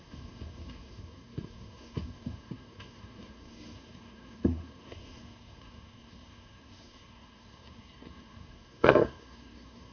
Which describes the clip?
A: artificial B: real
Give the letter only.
A